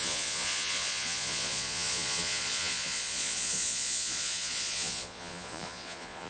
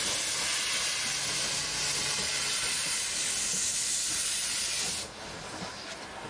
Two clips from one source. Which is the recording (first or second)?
second